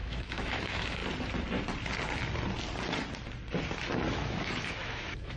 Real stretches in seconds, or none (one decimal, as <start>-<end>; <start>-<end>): 1.0-4.1